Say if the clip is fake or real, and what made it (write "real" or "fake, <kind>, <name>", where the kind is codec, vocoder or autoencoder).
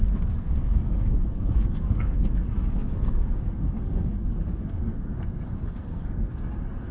fake, codec, SNAC